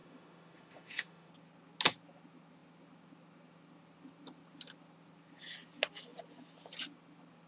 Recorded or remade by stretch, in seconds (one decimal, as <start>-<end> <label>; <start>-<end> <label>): 0.0-1.3 remade; 1.3-7.5 recorded